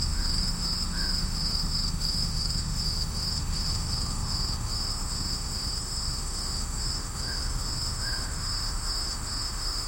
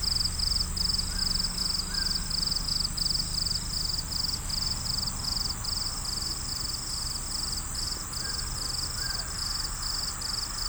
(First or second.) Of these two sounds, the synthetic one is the first